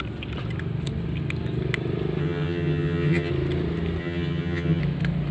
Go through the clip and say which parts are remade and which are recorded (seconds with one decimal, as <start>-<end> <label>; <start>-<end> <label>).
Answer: 0.0-2.2 recorded; 2.2-3.3 remade; 3.3-4.0 recorded; 4.0-4.8 remade; 4.8-5.3 recorded